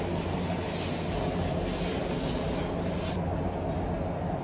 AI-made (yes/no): no